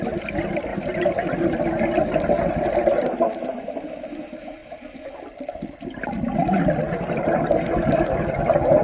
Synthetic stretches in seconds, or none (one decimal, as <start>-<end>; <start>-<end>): 4.6-8.3